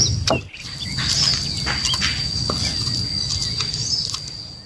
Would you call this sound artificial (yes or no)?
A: no